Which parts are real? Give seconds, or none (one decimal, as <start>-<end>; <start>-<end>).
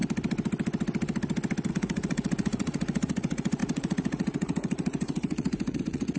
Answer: 0.0-1.7